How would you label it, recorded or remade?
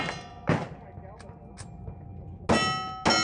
recorded